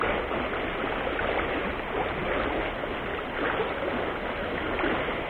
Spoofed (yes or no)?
no